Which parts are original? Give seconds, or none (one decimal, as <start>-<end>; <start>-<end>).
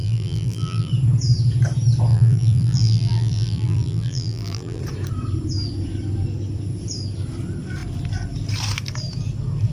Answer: 0.9-2.1; 4.8-9.7